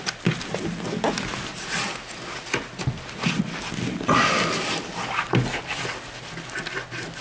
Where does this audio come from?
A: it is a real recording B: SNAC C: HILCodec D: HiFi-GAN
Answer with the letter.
A